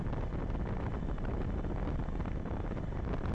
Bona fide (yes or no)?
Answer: yes